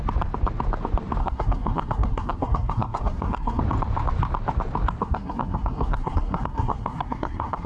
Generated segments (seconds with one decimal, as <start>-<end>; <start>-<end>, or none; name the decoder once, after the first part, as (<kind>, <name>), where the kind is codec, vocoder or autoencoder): 1.2-3.6 (codec, SNAC); 5.0-7.7